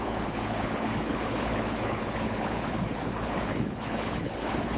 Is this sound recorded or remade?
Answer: remade